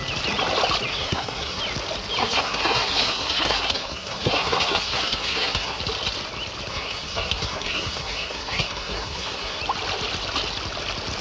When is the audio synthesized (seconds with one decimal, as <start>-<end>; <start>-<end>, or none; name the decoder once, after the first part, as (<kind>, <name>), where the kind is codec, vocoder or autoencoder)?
0.9-1.6 (codec, SNAC); 2.2-5.8; 6.7-9.6

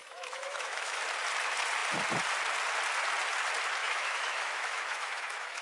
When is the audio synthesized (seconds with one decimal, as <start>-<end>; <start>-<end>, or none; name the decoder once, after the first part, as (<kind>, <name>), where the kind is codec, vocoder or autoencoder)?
0.0-1.0 (autoencoder, DAC-VAE); 3.8-5.6

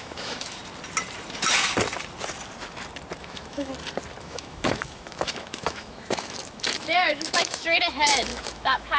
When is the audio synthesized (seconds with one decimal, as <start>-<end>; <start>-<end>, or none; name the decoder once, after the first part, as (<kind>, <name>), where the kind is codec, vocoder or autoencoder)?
0.0-0.6 (autoencoder, DAC-VAE); 3.2-3.7; 4.2-9.0